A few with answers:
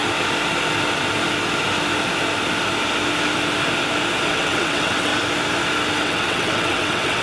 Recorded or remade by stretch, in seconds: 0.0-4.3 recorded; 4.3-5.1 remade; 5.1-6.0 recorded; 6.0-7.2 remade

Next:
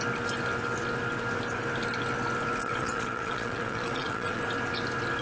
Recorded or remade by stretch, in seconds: 0.0-2.6 recorded; 2.6-4.4 remade; 4.4-5.2 recorded

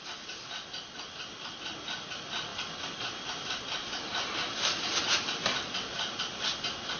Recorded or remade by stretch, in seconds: 0.0-7.0 recorded

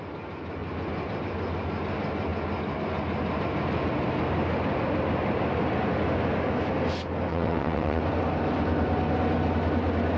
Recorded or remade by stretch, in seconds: 0.0-7.3 recorded; 7.3-8.0 remade; 8.0-10.2 recorded